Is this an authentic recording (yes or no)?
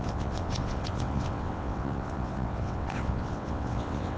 no